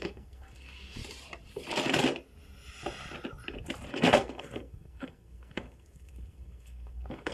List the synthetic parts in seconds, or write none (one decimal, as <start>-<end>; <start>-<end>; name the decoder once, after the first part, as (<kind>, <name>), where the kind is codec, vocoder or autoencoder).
0.0-1.0 (codec, SNAC); 3.9-7.3